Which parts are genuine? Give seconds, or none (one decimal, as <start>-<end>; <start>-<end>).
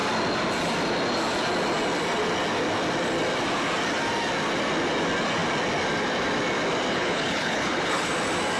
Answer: 0.0-6.9; 8.1-8.6